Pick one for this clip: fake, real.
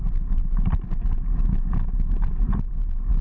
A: real